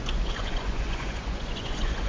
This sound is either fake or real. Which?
fake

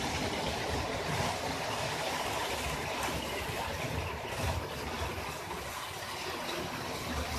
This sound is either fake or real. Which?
real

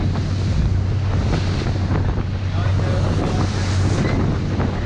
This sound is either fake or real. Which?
real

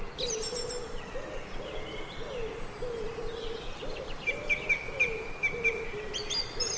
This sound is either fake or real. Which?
real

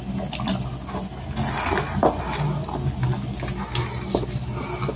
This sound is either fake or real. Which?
real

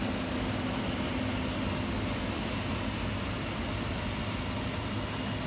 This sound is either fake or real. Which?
real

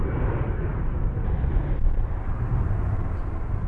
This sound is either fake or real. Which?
real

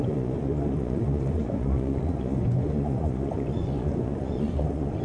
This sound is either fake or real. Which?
fake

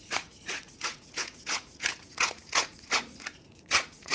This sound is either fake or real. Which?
fake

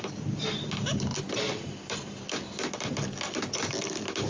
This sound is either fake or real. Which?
real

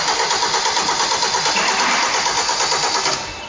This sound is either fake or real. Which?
real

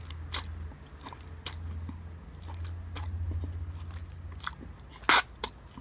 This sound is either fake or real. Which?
real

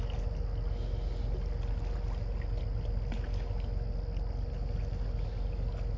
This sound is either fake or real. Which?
real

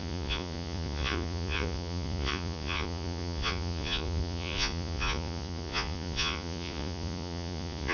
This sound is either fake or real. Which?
fake